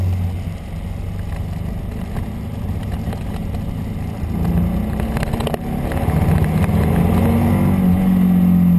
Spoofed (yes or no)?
no